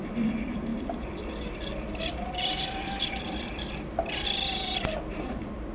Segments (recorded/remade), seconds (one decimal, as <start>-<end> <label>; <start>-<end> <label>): 0.0-5.7 remade